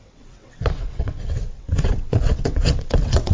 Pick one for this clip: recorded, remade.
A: remade